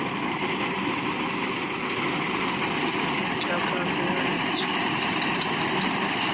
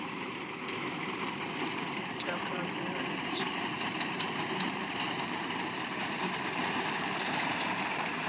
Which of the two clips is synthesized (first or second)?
second